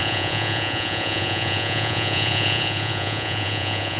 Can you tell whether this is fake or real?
fake